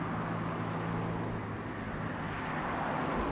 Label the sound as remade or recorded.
recorded